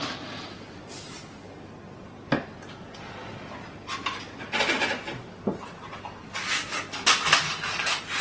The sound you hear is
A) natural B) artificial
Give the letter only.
A